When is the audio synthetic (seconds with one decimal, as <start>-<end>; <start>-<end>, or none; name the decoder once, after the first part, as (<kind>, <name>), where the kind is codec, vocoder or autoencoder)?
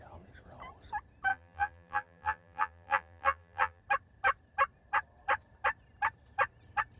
1.3-3.8 (vocoder, BigVGAN v2)